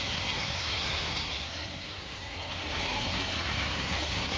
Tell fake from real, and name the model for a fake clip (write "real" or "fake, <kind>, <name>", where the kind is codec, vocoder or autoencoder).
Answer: fake, codec, SNAC